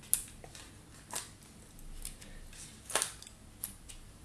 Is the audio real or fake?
real